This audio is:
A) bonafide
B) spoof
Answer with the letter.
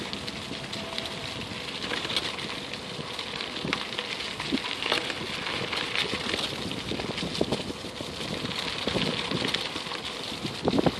A